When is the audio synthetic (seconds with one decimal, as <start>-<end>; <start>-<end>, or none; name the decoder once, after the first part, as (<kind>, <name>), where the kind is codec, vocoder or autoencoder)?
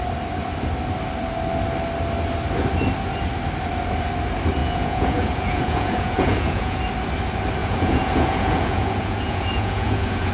4.6-6.8 (vocoder, Vocos); 7.6-10.3